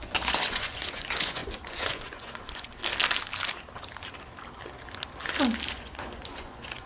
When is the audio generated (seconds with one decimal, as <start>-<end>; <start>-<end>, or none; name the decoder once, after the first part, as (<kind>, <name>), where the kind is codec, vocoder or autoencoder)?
0.0-2.8 (vocoder, Vocos); 5.7-6.9